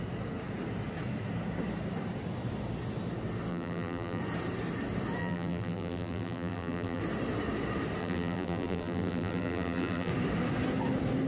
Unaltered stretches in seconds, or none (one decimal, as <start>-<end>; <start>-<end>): 0.0-3.5; 4.2-5.2; 7.0-8.0; 10.1-11.3